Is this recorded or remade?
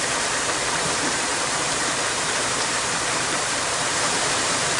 remade